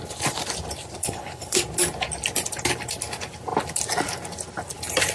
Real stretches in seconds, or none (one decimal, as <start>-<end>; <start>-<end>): 0.0-1.0; 1.6-5.1